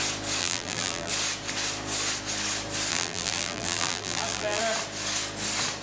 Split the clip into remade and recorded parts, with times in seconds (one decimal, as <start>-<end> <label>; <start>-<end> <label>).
0.0-0.4 recorded; 0.4-1.1 remade; 1.1-2.9 recorded; 2.9-4.6 remade; 4.6-5.8 recorded